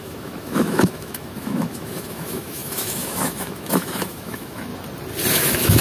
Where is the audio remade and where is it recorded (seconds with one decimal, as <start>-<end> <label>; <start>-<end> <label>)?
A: 0.0-4.7 remade; 4.7-5.3 recorded; 5.3-5.8 remade